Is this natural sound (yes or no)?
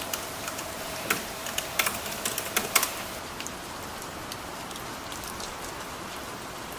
no